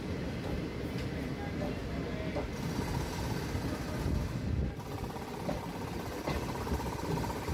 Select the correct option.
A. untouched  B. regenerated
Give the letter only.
A